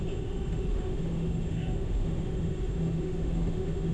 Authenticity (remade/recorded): remade